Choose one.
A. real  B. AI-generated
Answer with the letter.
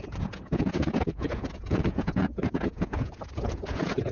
B